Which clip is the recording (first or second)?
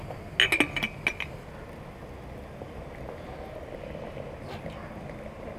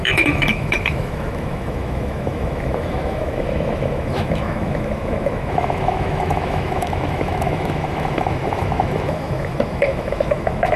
first